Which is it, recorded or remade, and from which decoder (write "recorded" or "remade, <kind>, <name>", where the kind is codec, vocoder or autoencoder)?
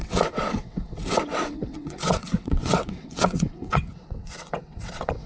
remade, vocoder, WaveNeXt